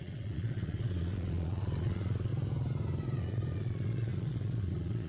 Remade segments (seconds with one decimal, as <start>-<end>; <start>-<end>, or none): 0.0-2.3; 3.2-5.1